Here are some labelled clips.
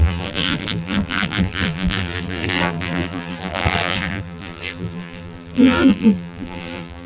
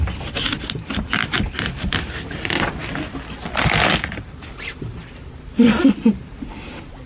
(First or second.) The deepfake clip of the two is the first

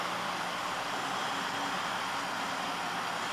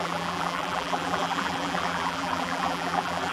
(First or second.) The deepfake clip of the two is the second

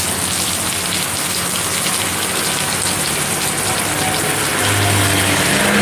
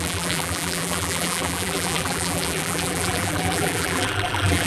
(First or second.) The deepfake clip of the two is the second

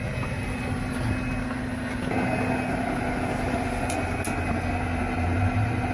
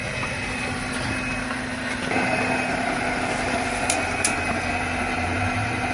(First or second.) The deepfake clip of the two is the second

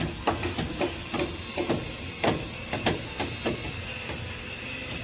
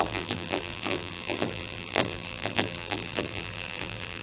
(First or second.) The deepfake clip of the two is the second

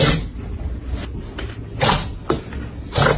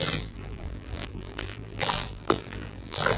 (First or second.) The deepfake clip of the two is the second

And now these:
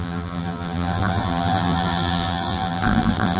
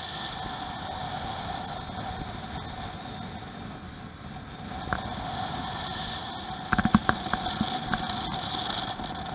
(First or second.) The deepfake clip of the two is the first